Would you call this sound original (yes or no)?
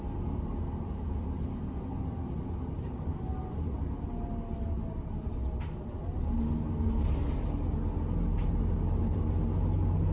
yes